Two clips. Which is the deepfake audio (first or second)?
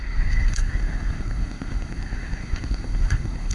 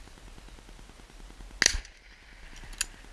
first